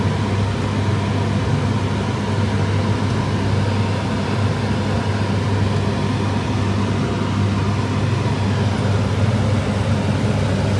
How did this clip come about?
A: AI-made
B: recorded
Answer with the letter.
B